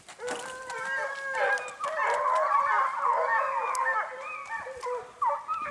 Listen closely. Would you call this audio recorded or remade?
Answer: recorded